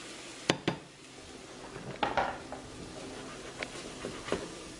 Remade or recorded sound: recorded